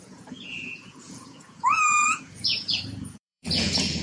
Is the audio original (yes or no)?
no